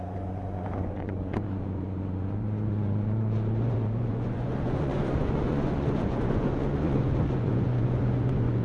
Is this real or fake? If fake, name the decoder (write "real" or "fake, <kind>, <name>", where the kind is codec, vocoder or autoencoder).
fake, vocoder, Vocos